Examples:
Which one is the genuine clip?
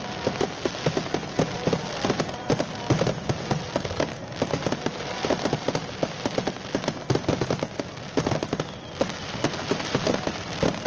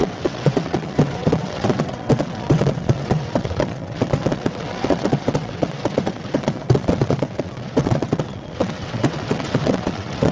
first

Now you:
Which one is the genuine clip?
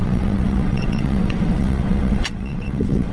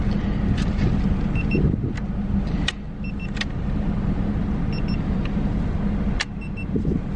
second